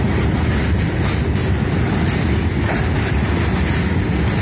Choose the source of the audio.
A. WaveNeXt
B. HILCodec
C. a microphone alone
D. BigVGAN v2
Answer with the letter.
C